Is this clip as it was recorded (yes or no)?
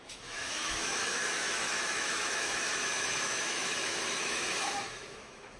no